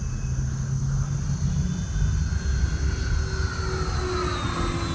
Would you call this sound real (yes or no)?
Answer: yes